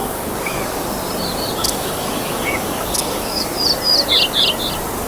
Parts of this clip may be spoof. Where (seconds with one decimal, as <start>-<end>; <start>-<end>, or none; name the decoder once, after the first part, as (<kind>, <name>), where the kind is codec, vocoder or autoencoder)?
0.0-0.9 (codec, DAC); 1.6-3.6